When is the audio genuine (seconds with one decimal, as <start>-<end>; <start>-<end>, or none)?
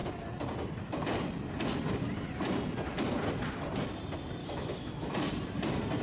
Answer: 0.0-4.4; 5.3-6.0